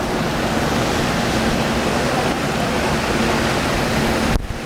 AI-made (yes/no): no